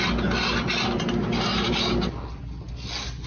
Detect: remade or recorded recorded